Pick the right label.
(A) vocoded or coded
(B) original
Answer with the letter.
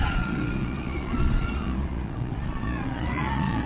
A